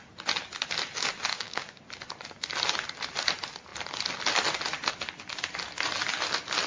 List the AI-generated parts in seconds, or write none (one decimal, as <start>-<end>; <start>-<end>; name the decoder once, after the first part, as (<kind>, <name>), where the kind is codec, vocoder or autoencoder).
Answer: 1.3-1.8 (codec, DAC)